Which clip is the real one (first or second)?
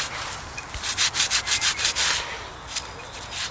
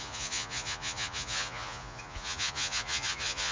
first